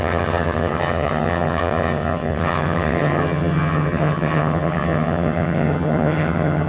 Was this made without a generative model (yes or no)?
no